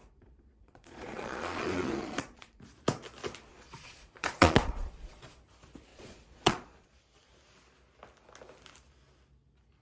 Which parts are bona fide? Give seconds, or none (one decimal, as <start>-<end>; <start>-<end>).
2.6-3.5; 5.4-5.9; 7.0-9.8